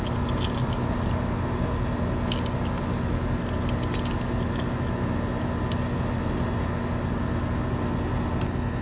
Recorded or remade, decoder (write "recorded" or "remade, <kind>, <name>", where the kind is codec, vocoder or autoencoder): recorded